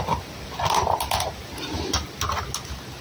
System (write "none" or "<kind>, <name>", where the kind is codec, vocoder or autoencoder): none